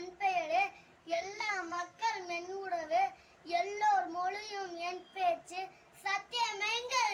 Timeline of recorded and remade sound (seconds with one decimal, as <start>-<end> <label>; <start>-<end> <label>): 0.0-1.0 recorded; 1.0-2.1 remade; 2.1-7.1 recorded